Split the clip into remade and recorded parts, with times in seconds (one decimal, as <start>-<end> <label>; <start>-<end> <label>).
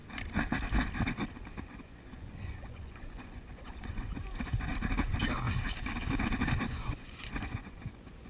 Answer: 0.0-1.6 recorded; 1.6-4.7 remade; 4.7-6.7 recorded; 6.7-8.3 remade